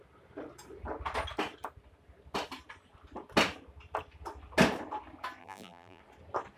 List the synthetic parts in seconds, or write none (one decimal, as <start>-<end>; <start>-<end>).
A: 5.4-6.0